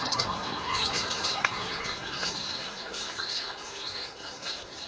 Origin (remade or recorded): remade